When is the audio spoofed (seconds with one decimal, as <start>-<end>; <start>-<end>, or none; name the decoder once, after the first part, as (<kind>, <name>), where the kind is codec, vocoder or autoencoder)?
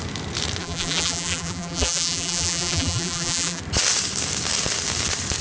0.6-3.6 (vocoder, BigVGAN v2)